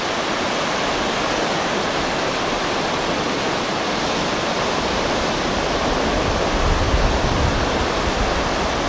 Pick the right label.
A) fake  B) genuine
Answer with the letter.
B